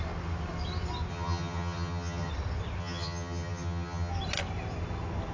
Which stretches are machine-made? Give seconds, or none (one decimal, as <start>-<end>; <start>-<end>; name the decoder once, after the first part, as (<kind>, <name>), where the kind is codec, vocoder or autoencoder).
1.1-2.3 (vocoder, HiFi-GAN); 2.8-4.1